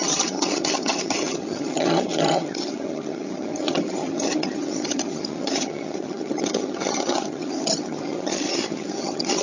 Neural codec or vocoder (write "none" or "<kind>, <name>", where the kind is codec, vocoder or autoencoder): vocoder, HiFi-GAN